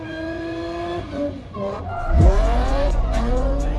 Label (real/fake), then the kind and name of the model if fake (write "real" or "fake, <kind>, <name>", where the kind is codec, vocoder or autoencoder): fake, vocoder, Vocos